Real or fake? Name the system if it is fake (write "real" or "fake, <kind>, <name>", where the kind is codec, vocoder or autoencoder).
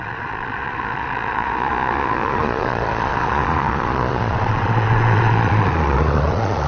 fake, vocoder, Vocos